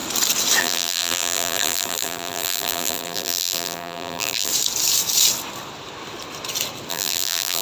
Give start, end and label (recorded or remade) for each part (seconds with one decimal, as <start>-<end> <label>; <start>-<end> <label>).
0.0-0.6 recorded; 0.6-4.5 remade; 4.5-6.9 recorded; 6.9-7.6 remade